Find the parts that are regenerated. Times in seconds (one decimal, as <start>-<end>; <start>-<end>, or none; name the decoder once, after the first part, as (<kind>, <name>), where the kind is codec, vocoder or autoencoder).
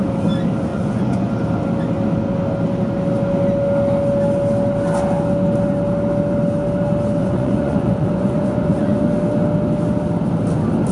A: 0.7-1.3 (vocoder, Vocos); 7.2-9.0